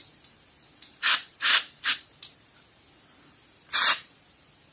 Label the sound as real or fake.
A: fake